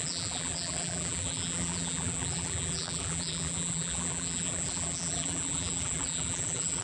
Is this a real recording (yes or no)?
no